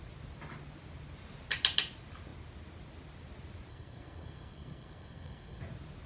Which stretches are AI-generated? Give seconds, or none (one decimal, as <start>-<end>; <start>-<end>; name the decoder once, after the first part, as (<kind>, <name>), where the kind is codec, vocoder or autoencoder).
3.7-5.6 (codec, SNAC)